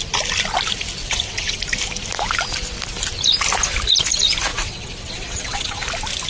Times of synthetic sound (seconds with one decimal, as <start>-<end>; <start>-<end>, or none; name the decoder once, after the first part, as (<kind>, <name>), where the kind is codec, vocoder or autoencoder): 1.0-1.6 (vocoder, WaveNeXt); 4.5-5.8